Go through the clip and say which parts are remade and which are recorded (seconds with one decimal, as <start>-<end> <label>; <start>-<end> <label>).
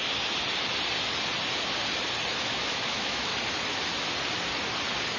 0.0-2.4 recorded; 2.4-3.3 remade; 3.3-5.2 recorded